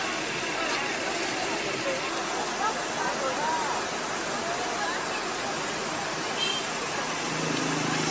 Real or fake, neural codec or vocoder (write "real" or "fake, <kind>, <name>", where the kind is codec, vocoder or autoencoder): real